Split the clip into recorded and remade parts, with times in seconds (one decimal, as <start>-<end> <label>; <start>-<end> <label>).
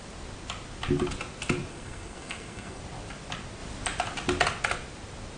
0.0-1.7 recorded; 1.7-2.8 remade; 2.8-5.4 recorded